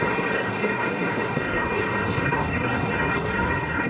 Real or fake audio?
fake